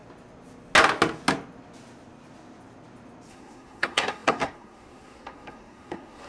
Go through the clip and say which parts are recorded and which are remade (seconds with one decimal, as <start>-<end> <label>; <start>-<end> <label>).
0.0-3.3 recorded; 3.3-6.3 remade